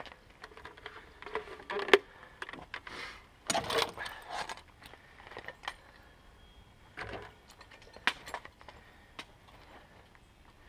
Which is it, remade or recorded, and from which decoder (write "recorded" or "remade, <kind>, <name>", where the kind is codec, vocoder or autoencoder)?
recorded